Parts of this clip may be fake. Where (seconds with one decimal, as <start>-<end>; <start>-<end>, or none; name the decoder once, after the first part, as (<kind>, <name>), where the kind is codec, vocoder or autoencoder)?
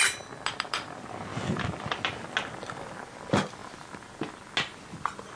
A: none